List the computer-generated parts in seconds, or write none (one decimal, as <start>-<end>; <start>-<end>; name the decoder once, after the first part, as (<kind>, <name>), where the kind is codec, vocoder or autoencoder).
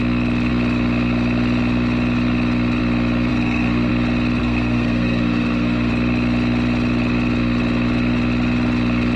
3.3-3.9 (codec, SNAC); 4.4-5.9